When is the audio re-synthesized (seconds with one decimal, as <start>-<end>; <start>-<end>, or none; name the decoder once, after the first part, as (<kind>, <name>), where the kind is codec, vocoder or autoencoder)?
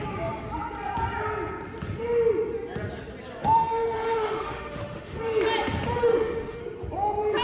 3.4-5.2 (autoencoder, DAC-VAE); 6.0-6.6